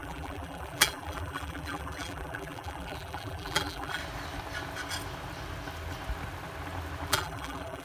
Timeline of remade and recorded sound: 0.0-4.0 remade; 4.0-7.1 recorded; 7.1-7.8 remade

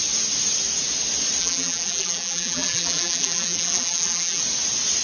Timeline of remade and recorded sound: 0.0-1.4 recorded; 1.4-4.4 remade; 4.4-5.0 recorded